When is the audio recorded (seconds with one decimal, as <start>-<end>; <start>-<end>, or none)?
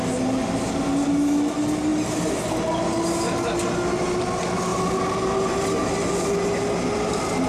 0.0-7.5